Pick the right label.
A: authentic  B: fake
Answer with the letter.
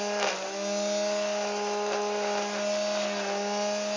A